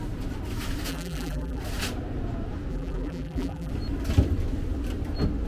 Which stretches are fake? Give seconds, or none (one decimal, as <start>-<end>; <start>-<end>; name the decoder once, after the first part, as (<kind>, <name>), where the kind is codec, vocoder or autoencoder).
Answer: 0.9-1.6 (vocoder, BigVGAN v2); 2.7-3.7